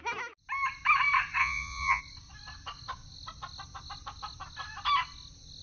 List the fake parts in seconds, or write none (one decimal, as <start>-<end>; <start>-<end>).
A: 1.4-2.0